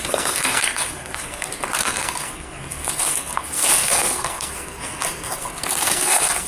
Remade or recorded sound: remade